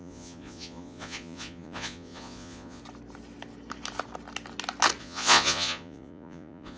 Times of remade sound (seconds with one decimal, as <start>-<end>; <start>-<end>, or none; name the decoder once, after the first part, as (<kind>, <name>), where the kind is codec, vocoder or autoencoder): 0.0-2.8 (vocoder, Vocos); 5.0-6.8